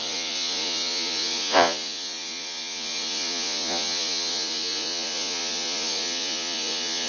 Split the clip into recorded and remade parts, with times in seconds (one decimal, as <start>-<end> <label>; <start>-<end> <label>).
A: 0.0-7.1 remade